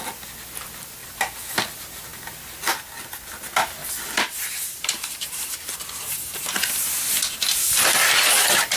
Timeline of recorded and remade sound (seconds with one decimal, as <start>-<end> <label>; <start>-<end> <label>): 0.0-1.0 recorded; 1.0-1.5 remade; 1.5-3.8 recorded; 3.8-5.8 remade; 5.8-8.8 recorded

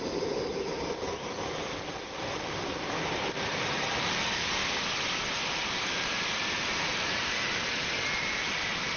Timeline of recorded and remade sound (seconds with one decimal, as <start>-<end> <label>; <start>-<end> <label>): 0.0-4.6 remade; 4.6-5.5 recorded; 5.5-9.0 remade

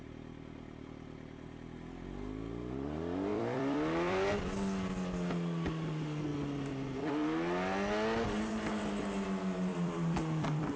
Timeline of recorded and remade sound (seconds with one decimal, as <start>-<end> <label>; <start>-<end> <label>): 0.0-3.3 recorded; 3.3-4.3 remade; 4.3-9.7 recorded; 9.7-10.8 remade

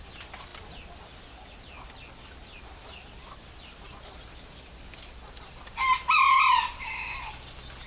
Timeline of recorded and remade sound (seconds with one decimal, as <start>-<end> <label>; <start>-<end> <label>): 0.0-7.9 recorded